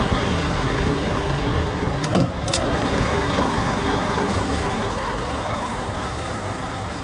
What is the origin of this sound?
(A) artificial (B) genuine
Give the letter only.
A